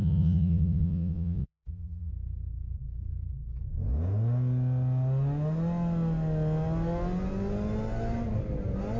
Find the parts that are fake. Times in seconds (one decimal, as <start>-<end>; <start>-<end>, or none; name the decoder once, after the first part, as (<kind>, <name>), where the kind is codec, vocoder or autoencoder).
0.0-2.1 (vocoder, Vocos)